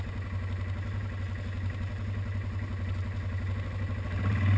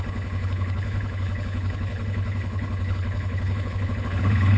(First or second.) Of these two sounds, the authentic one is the first